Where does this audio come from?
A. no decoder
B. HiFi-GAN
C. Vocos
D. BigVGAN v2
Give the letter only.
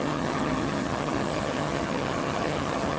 B